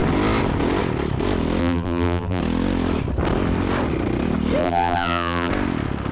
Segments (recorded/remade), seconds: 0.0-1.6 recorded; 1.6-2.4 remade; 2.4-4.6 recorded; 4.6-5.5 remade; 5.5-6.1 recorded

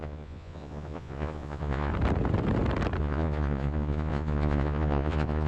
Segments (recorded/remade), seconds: 0.0-1.9 remade; 1.9-3.0 recorded; 3.0-5.5 remade

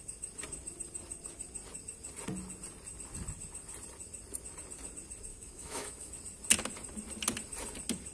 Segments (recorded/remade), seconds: 0.0-5.3 recorded; 5.3-6.1 remade; 6.1-8.1 recorded

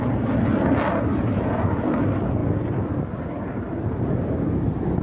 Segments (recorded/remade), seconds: 0.0-5.0 recorded

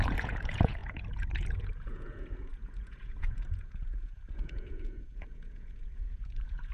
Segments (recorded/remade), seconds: 0.0-6.7 remade

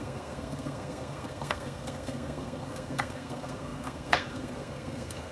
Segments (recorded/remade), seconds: 0.0-5.3 remade

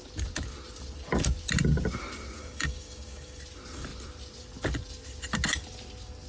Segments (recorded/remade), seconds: 0.0-2.4 recorded; 2.4-3.4 remade; 3.4-6.3 recorded